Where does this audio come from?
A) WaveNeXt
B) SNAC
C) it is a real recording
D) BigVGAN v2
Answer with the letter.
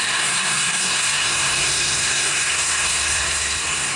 B